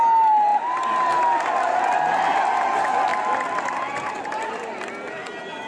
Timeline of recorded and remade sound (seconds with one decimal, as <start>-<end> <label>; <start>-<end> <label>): 0.0-5.7 recorded